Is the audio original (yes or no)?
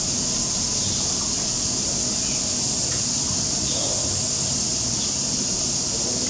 yes